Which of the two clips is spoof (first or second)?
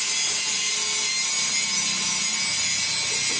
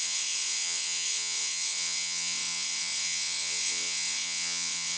second